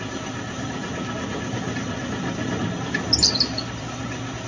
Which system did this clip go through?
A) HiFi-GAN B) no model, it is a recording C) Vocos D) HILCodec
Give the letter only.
B